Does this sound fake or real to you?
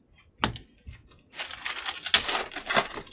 real